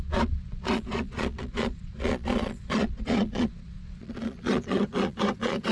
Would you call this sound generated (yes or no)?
yes